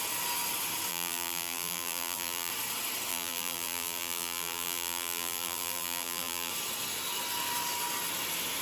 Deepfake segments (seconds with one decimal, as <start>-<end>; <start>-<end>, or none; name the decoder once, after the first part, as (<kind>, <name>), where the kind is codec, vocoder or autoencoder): 0.9-2.5 (vocoder, BigVGAN v2); 3.1-6.5